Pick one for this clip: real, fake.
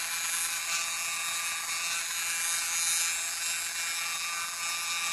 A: real